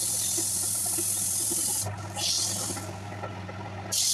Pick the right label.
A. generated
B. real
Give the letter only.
B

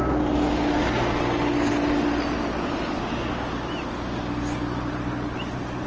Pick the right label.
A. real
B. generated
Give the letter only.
A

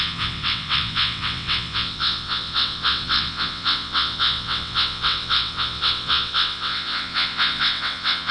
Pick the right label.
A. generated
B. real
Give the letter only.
A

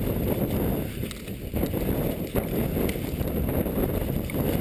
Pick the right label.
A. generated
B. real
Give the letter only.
B